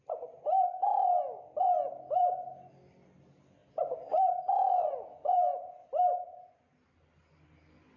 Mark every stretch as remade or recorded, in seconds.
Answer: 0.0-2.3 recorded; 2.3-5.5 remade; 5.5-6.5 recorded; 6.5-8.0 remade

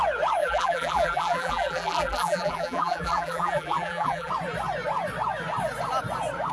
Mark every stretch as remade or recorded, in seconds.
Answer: 0.0-0.4 recorded; 0.4-4.3 remade; 4.3-6.5 recorded

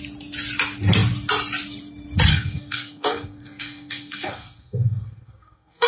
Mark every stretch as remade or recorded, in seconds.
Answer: 0.0-2.3 recorded; 2.3-5.9 remade

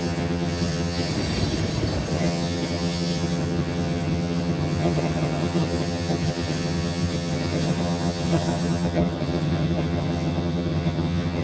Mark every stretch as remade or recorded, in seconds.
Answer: 0.0-1.1 remade; 1.1-2.1 recorded; 2.1-11.4 remade

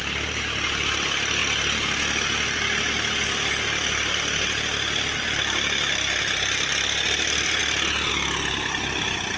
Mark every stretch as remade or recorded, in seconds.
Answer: 0.0-9.4 recorded

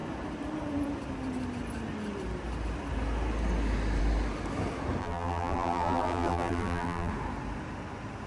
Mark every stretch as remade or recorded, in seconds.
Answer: 0.0-5.0 recorded; 5.0-7.1 remade; 7.1-8.3 recorded

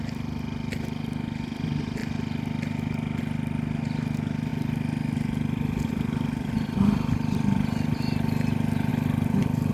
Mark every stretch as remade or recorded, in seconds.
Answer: 0.0-9.7 recorded

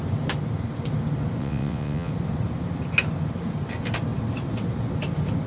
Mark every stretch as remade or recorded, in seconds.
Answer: 0.0-1.4 recorded; 1.4-2.1 remade; 2.1-5.5 recorded